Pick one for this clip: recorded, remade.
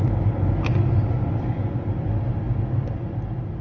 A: recorded